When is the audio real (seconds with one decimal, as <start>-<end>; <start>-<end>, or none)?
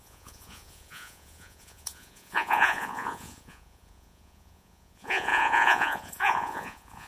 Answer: none